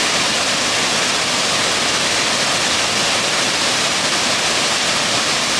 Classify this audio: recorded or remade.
recorded